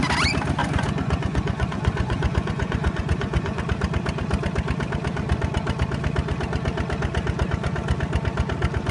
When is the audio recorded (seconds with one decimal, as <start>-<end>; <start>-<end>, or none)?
0.0-0.6; 3.6-8.9